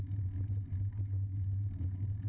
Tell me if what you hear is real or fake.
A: real